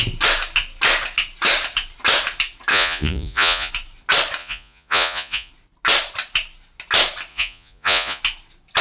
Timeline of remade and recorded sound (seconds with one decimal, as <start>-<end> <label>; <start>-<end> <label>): 0.0-2.7 recorded; 2.7-3.7 remade; 3.7-4.4 recorded; 4.4-5.5 remade; 5.5-7.3 recorded; 7.3-8.2 remade; 8.2-8.8 recorded